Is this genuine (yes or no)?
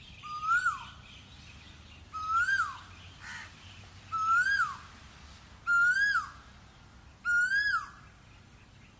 yes